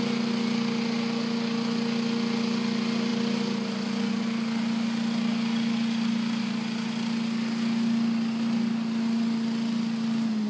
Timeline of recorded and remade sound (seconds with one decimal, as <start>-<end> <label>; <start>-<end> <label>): 0.0-10.5 recorded